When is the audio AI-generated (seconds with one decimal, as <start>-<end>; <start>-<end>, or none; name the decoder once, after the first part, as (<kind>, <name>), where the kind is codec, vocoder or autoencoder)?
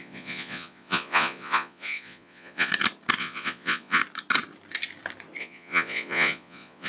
0.0-2.7 (vocoder, Vocos); 3.2-4.0; 5.4-6.9